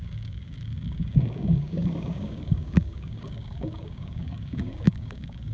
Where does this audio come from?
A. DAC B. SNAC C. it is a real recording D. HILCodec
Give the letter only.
A